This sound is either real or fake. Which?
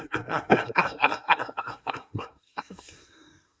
fake